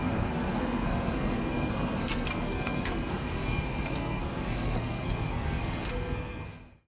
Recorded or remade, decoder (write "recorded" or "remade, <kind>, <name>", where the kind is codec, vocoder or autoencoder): remade, codec, SNAC